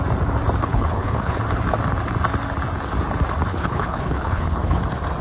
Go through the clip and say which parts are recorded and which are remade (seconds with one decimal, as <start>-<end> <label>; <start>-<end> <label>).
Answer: 0.0-0.7 recorded; 0.7-1.4 remade; 1.4-3.5 recorded; 3.5-4.8 remade; 4.8-5.2 recorded